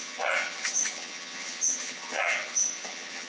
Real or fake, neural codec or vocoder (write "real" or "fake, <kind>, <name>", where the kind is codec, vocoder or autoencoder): fake, vocoder, HiFi-GAN